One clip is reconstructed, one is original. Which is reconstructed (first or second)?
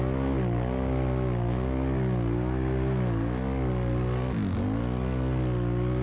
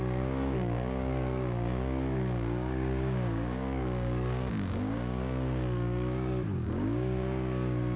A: second